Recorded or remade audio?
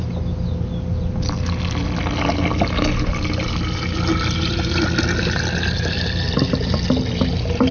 recorded